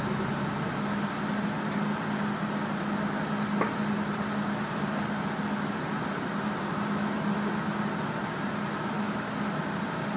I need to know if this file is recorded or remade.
recorded